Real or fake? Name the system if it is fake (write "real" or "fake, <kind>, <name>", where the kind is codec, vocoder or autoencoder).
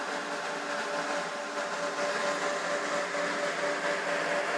real